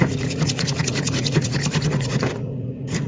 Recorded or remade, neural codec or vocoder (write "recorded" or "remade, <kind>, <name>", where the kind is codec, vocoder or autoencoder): remade, vocoder, Vocos